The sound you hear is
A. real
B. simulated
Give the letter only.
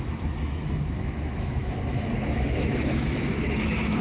B